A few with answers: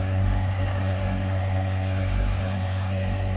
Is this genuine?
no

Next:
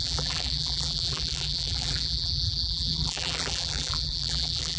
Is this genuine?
no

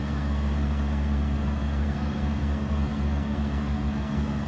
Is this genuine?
no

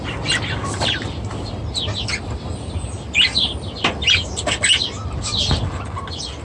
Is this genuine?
yes